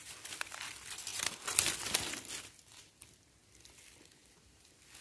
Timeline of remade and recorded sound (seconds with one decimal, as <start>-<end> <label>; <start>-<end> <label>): 0.0-5.0 recorded